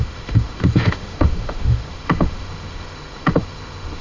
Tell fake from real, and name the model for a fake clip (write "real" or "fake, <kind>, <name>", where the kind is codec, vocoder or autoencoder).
fake, autoencoder, DAC-VAE